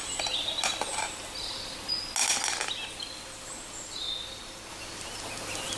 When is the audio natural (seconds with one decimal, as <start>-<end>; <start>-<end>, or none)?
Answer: 0.0-5.8